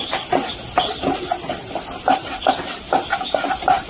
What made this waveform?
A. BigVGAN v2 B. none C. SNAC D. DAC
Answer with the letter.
B